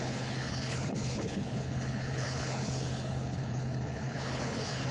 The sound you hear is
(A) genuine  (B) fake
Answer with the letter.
B